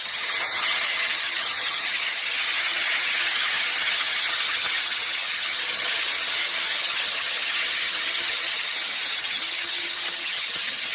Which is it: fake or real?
fake